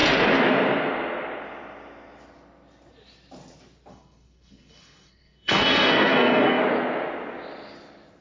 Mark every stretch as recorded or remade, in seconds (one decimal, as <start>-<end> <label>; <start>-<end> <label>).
0.0-3.9 recorded; 3.9-6.6 remade; 6.6-8.2 recorded